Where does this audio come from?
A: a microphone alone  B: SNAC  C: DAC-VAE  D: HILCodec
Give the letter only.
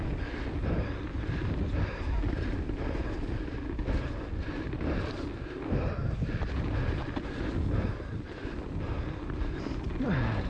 A